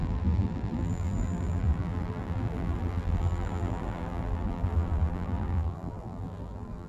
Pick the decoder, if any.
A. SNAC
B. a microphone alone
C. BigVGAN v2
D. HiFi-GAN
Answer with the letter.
C